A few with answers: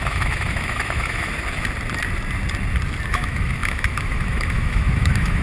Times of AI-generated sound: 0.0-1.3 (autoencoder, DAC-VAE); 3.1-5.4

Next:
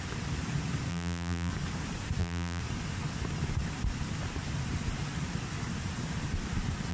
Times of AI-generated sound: 0.9-1.5 (vocoder, BigVGAN v2); 2.2-2.6

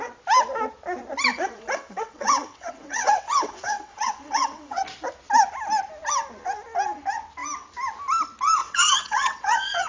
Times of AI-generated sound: 1.3-4.8 (vocoder, WaveNeXt); 8.6-9.9

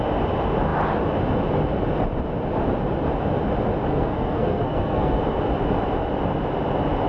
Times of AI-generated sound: 3.9-5.4 (codec, SNAC)

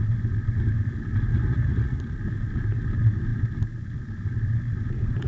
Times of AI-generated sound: 1.3-2.0 (vocoder, Vocos)